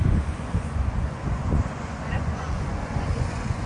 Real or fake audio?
fake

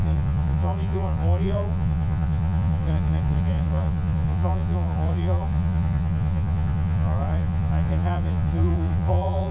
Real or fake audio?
fake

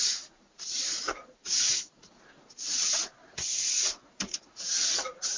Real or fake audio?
fake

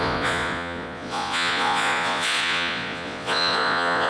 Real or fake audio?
fake